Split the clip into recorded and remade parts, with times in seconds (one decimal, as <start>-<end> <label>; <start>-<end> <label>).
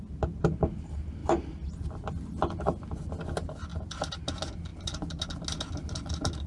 0.0-1.2 recorded; 1.2-1.9 remade; 1.9-3.7 recorded; 3.7-4.3 remade; 4.3-4.7 recorded; 4.7-5.2 remade; 5.2-6.5 recorded